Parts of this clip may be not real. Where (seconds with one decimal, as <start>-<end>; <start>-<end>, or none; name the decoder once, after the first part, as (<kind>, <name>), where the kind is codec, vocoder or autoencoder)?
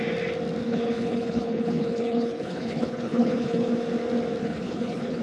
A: 0.6-3.7 (codec, HILCodec); 4.4-5.2